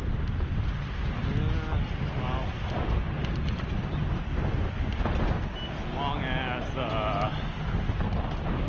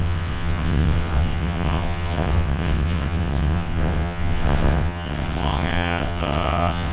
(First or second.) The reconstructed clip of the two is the second